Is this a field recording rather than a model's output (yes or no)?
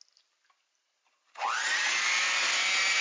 yes